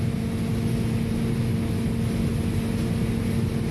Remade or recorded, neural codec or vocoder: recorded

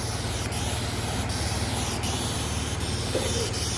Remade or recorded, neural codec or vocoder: recorded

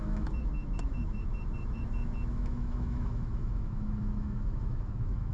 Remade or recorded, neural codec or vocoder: remade, autoencoder, DAC-VAE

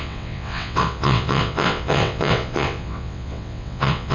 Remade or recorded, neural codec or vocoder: remade, vocoder, WaveNeXt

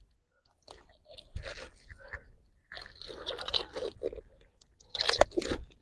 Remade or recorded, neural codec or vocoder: recorded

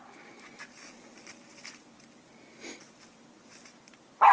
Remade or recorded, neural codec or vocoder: recorded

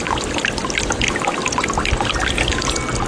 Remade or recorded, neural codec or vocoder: recorded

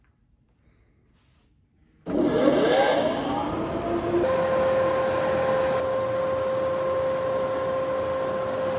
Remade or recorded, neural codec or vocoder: recorded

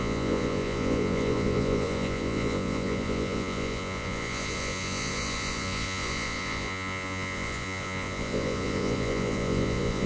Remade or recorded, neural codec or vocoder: remade, vocoder, Vocos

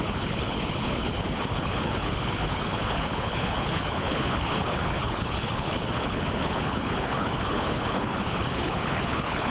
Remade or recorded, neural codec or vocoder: remade, codec, HILCodec